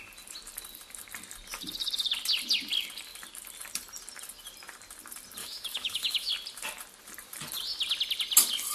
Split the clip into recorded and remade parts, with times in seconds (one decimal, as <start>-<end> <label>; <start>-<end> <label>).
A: 0.0-5.4 recorded; 5.4-6.3 remade; 6.3-8.7 recorded